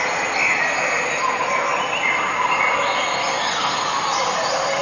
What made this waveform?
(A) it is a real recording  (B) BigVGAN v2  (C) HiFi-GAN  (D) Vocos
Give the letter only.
A